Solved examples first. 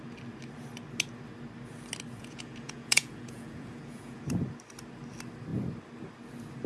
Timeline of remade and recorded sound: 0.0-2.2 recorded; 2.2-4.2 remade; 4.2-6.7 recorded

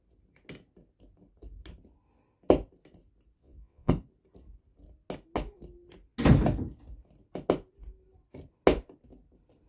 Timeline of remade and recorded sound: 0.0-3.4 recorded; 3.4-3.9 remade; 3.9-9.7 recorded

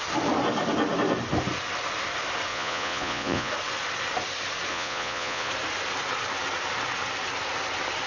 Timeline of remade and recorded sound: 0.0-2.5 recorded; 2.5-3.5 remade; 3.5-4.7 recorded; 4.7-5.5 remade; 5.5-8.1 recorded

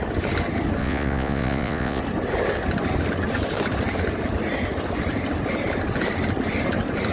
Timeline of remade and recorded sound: 0.0-0.8 recorded; 0.8-2.0 remade; 2.0-7.1 recorded

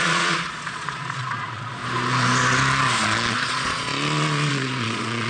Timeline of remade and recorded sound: 0.0-1.8 remade; 1.8-3.3 recorded; 3.3-3.9 remade; 3.9-4.5 recorded; 4.5-5.3 remade

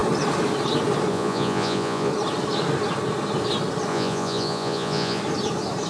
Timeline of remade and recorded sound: 0.0-1.1 recorded; 1.1-2.1 remade; 2.1-3.9 recorded; 3.9-5.2 remade; 5.2-5.9 recorded

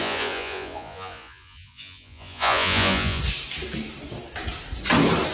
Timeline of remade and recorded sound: 0.0-3.2 remade; 3.2-5.3 recorded

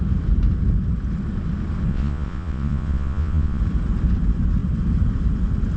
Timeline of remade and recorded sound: 0.0-1.9 recorded; 1.9-3.6 remade; 3.6-5.8 recorded